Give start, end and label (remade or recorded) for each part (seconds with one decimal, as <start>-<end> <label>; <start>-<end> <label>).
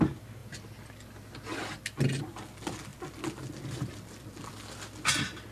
0.0-5.5 recorded